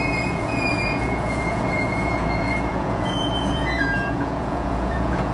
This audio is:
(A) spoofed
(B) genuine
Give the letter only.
A